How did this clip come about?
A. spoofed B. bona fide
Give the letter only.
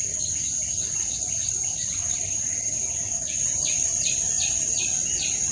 B